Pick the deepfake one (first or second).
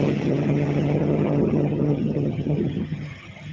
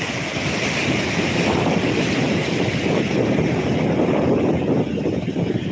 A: first